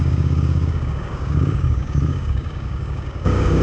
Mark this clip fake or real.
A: fake